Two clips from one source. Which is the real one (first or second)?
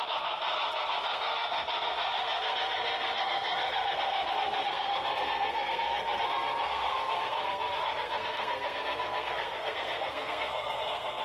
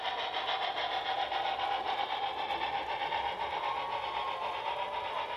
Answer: second